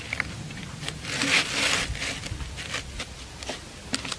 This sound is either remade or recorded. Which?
recorded